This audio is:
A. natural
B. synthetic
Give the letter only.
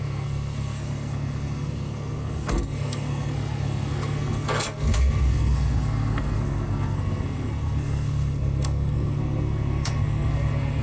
B